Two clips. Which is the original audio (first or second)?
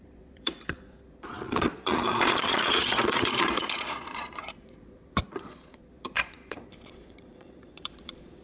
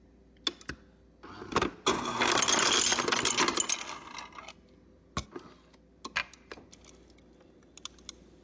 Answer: second